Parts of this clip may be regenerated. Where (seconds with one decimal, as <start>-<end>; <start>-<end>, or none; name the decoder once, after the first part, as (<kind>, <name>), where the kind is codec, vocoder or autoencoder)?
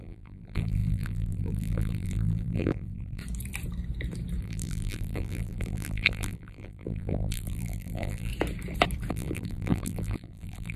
0.0-3.2 (vocoder, BigVGAN v2); 4.4-8.3; 9.1-10.8